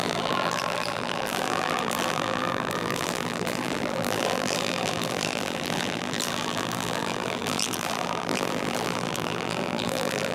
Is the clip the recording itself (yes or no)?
no